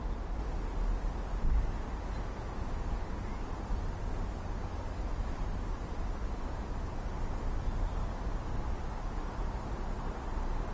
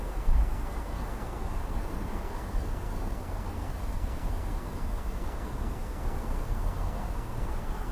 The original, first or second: first